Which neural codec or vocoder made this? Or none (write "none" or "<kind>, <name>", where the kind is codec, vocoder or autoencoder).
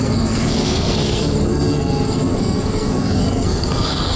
codec, SNAC